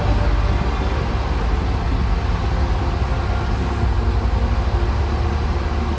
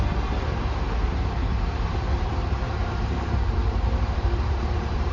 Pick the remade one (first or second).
second